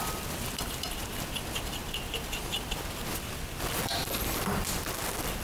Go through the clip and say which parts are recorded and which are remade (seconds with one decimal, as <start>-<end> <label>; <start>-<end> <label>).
0.0-5.4 recorded